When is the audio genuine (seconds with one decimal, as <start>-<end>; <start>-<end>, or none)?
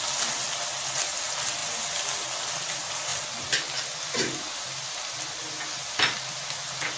0.0-7.0